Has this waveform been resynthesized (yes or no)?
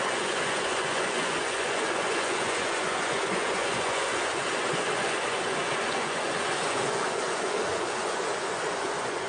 yes